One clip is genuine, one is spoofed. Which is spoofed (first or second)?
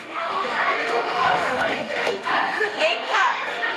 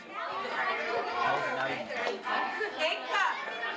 first